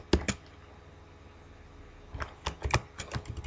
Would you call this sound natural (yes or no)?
yes